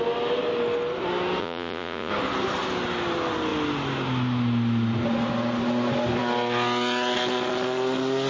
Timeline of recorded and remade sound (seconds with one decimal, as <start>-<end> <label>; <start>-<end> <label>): 0.0-1.4 recorded; 1.4-2.1 remade; 2.1-8.3 recorded